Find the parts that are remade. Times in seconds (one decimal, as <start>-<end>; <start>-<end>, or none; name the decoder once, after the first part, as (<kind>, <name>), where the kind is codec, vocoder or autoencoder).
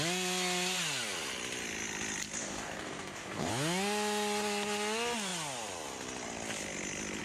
2.4-3.5 (codec, DAC)